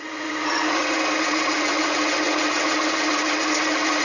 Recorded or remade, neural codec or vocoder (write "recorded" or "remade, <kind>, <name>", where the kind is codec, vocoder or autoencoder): remade, vocoder, WaveNeXt